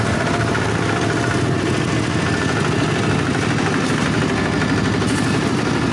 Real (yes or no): yes